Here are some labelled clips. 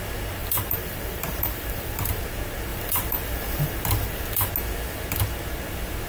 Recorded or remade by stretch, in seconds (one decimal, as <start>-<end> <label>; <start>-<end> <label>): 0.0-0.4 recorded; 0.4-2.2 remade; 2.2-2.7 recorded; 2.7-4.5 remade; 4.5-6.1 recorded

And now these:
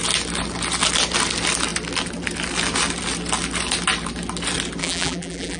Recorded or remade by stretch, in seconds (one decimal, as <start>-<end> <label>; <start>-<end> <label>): 0.0-4.8 recorded; 4.8-5.6 remade

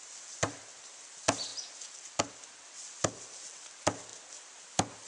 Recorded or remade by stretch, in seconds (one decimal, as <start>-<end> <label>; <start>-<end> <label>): 0.0-5.1 recorded

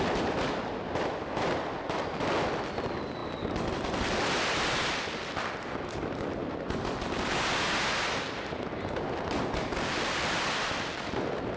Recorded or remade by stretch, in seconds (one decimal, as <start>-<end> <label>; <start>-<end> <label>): 0.0-11.6 recorded